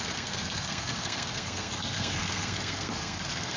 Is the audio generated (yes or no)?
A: yes